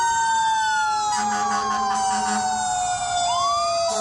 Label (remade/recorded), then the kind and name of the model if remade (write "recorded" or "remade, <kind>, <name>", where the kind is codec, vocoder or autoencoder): recorded